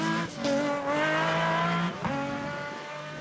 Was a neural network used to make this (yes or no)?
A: no